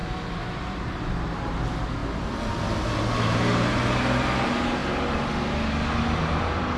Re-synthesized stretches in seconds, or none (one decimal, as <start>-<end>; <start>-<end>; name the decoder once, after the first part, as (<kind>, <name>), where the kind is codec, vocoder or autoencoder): none